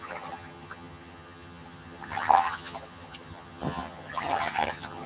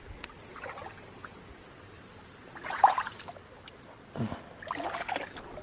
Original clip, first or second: second